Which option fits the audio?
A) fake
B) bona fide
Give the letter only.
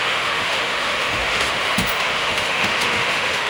A